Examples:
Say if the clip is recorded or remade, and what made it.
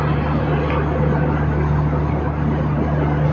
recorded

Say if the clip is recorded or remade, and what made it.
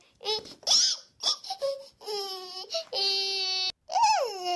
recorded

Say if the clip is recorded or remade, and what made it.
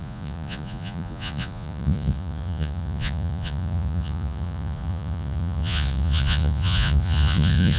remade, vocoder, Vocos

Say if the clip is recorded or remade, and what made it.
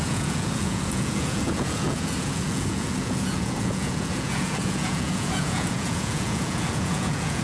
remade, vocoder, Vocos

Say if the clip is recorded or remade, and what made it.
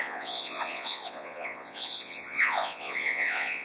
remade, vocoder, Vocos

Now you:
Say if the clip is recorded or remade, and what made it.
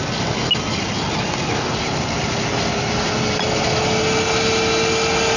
recorded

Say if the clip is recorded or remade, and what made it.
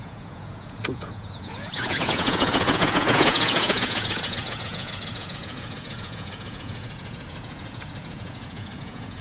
remade, vocoder, Vocos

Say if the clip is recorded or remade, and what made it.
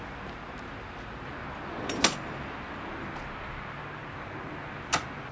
recorded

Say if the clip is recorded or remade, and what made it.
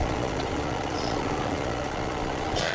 remade, vocoder, Vocos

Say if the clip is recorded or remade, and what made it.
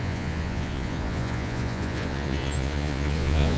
remade, vocoder, Vocos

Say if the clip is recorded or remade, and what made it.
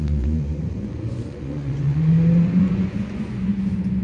remade, vocoder, Vocos